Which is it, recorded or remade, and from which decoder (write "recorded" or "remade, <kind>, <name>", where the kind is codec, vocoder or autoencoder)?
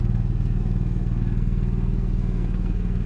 remade, codec, SNAC